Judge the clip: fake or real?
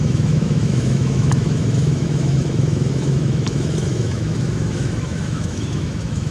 fake